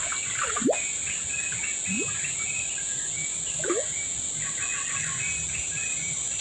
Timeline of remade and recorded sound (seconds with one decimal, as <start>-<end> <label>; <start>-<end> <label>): 0.0-6.4 recorded